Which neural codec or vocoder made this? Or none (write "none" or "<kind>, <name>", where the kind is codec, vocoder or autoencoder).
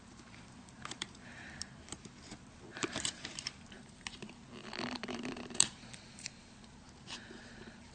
vocoder, BigVGAN v2